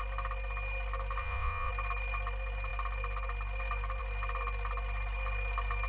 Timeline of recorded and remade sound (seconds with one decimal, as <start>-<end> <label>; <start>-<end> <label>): 0.0-1.2 recorded; 1.2-1.7 remade; 1.7-5.9 recorded